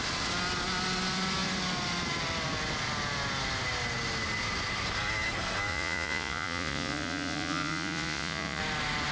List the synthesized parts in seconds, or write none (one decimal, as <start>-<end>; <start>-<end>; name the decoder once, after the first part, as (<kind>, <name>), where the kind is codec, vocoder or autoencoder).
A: 5.7-8.6 (vocoder, Vocos)